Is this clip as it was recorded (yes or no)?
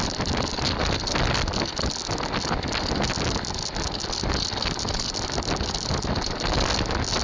yes